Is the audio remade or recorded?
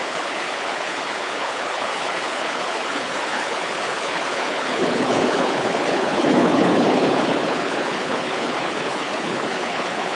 remade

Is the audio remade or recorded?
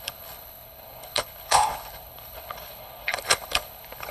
remade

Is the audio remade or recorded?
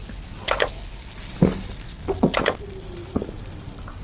recorded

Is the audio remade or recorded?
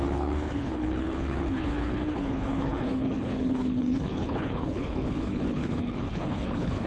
remade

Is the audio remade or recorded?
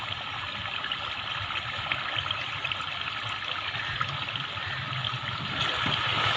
recorded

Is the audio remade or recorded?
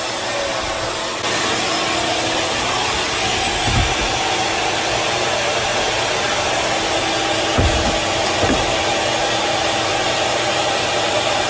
recorded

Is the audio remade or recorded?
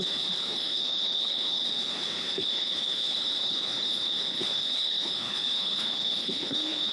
remade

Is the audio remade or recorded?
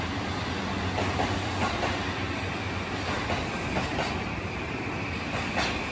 recorded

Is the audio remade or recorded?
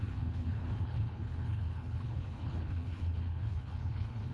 remade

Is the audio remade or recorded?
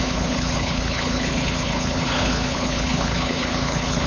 remade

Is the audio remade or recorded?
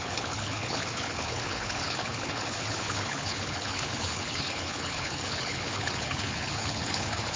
remade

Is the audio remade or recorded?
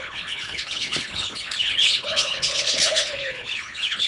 remade